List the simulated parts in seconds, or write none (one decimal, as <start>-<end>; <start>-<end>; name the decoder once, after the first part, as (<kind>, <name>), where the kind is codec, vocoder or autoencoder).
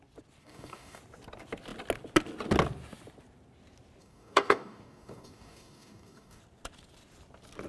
0.4-1.0 (codec, DAC); 4.0-6.4